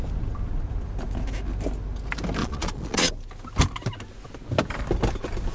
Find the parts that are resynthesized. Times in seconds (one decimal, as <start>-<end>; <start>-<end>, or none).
2.4-3.1